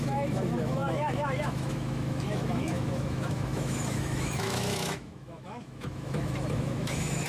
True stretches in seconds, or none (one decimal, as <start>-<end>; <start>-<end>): none